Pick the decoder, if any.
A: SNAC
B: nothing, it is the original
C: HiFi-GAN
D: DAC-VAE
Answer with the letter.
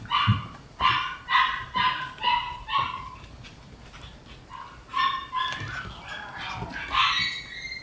B